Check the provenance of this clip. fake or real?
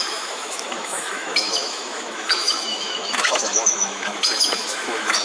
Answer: fake